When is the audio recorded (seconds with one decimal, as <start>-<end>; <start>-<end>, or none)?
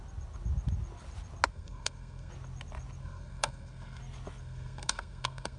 0.0-1.5; 2.3-3.0; 4.0-4.4